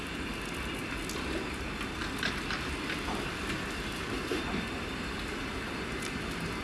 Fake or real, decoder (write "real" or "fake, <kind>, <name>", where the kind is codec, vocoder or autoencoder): real